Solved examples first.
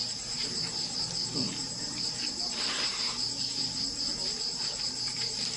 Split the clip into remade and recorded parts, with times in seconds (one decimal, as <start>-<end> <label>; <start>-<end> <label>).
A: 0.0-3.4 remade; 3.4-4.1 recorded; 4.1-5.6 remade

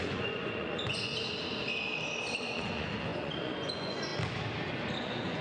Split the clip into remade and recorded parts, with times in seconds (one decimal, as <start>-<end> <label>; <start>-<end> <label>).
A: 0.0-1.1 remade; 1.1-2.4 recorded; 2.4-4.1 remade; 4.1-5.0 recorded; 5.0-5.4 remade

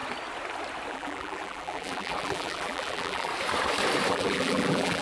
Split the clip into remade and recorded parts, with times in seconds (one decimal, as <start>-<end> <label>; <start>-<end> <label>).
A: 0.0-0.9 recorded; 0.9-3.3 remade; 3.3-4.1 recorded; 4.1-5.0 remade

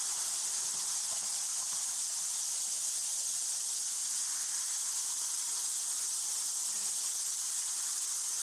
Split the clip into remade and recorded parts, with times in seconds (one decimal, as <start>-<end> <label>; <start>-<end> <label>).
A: 0.0-8.4 remade